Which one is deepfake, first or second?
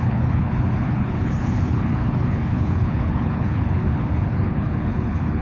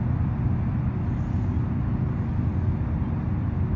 first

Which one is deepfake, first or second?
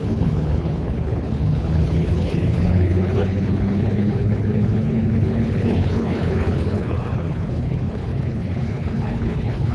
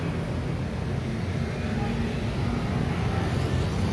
first